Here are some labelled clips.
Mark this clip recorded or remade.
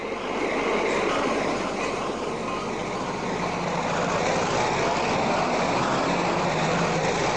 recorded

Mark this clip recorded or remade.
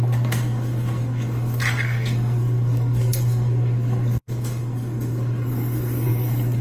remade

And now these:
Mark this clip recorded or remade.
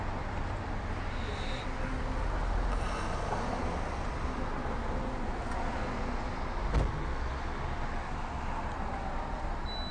recorded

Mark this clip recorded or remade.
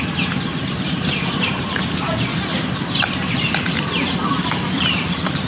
remade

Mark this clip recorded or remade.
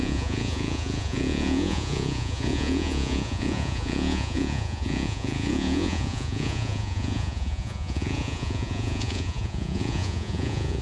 remade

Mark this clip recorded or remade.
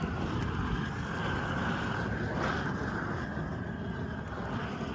recorded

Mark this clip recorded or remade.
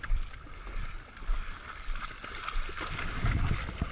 recorded